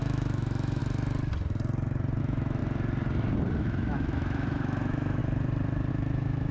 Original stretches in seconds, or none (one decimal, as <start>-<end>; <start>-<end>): 0.8-2.2; 2.6-3.6; 5.2-5.9